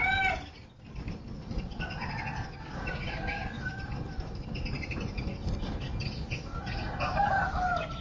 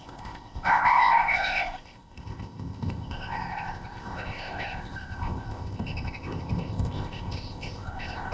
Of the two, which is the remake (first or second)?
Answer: second